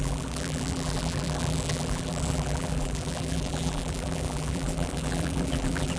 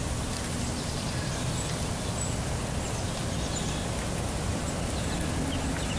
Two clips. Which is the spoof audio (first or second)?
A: first